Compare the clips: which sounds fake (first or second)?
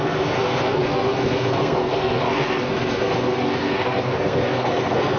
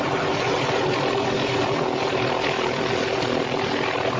first